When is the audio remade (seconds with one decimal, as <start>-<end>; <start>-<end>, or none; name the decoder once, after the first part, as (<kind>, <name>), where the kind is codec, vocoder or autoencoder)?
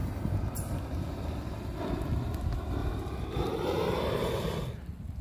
2.8-4.3 (vocoder, BigVGAN v2)